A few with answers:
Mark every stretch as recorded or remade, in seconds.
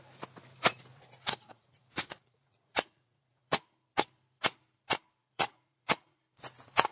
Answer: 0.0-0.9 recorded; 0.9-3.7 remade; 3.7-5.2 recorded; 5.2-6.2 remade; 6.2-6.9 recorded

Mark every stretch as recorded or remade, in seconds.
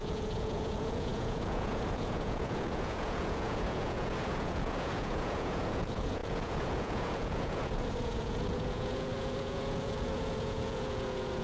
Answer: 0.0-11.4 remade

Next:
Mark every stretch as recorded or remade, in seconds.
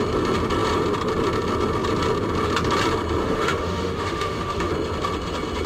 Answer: 0.0-3.2 recorded; 3.2-4.7 remade; 4.7-5.7 recorded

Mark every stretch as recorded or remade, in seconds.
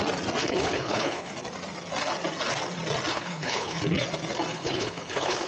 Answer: 0.0-0.4 recorded; 0.4-1.3 remade; 1.3-3.1 recorded; 3.1-3.8 remade; 3.8-4.5 recorded; 4.5-5.5 remade